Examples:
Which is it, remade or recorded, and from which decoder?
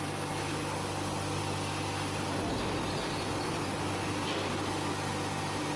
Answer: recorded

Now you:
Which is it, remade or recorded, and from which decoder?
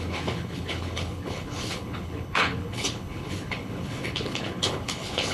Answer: remade, codec, HILCodec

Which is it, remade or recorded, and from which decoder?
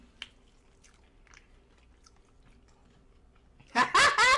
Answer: recorded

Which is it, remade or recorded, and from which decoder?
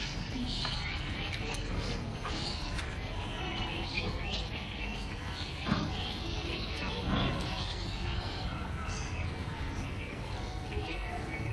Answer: remade, codec, SNAC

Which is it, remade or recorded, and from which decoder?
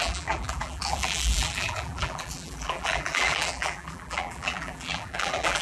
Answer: remade, vocoder, BigVGAN v2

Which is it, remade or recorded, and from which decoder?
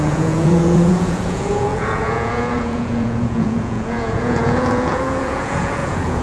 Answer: remade, vocoder, Vocos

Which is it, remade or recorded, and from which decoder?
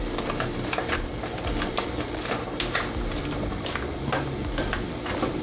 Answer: recorded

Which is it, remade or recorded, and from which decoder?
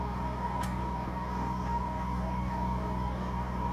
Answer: remade, codec, DAC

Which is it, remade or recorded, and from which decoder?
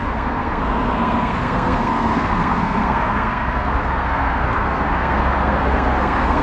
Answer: remade, codec, SNAC